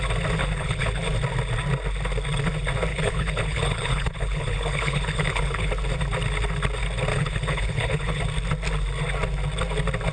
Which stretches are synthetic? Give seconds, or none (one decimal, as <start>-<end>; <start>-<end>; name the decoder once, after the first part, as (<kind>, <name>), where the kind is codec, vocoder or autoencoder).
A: 0.4-1.0 (codec, HILCodec); 2.9-5.7; 7.1-8.2